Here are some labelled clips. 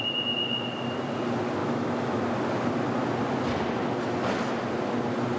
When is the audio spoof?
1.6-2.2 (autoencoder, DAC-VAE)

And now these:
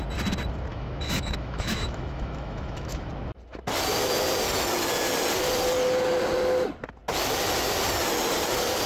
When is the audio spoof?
0.7-3.1 (autoencoder, DAC-VAE)